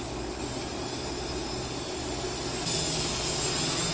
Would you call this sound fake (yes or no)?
no